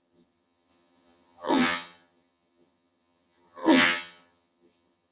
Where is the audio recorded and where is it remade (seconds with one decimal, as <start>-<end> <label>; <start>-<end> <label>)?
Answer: 0.0-5.1 remade